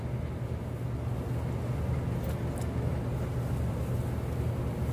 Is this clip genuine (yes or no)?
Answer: yes